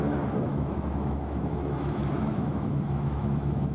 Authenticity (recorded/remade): remade